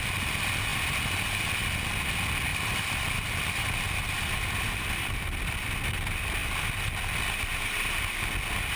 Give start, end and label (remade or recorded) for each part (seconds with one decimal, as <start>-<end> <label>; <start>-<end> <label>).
0.0-0.7 recorded; 0.7-1.6 remade; 1.6-2.5 recorded; 2.5-5.7 remade; 5.7-8.8 recorded